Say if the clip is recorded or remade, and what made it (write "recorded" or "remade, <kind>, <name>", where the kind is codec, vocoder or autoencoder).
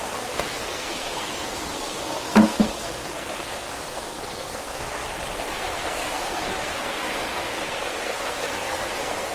remade, codec, SNAC